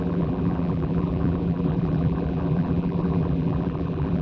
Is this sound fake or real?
fake